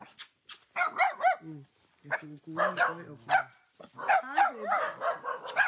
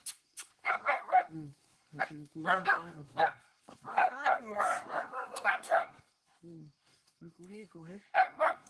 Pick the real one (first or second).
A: first